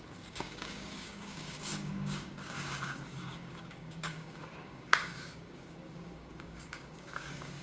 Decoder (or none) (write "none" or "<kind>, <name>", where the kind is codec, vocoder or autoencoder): codec, DAC